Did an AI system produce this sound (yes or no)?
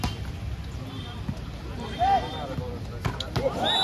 no